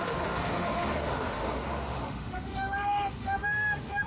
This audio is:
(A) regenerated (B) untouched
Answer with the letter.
A